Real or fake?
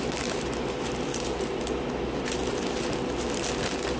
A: real